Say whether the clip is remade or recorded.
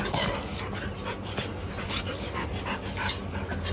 recorded